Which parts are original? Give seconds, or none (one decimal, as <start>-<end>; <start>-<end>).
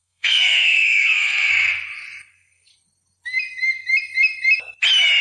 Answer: 1.5-2.3; 2.7-5.2